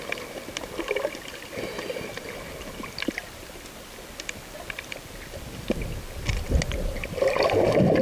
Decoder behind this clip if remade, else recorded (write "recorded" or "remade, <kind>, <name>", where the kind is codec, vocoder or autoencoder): recorded